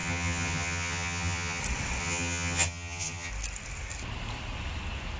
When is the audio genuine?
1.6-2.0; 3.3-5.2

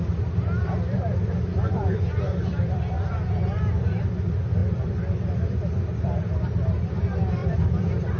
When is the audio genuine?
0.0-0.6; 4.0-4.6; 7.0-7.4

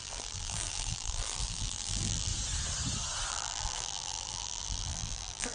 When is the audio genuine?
2.3-3.3

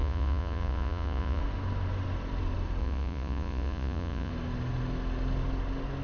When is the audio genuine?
1.4-2.8; 4.3-6.0

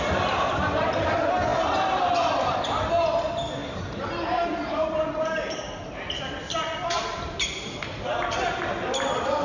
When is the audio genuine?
0.0-3.6; 6.0-9.4

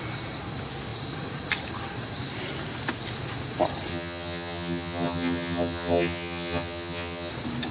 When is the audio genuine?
0.0-3.9; 7.3-7.7